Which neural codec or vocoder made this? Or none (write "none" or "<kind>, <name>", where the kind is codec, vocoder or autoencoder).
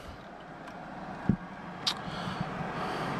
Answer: none